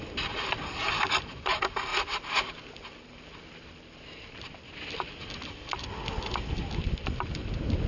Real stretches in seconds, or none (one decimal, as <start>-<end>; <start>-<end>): 0.0-7.9

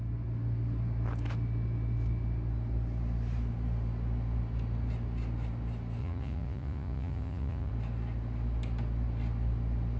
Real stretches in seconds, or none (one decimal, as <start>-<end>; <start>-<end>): 0.0-6.0; 7.7-10.0

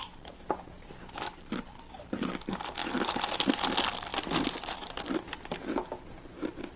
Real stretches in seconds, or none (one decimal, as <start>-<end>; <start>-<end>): 0.0-2.8; 3.6-4.1; 5.5-6.8

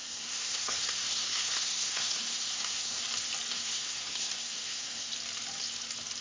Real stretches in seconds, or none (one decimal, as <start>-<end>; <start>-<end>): 3.0-3.5; 5.1-6.2

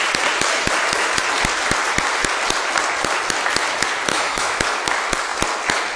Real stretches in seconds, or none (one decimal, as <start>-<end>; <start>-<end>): 0.0-4.1; 4.6-6.0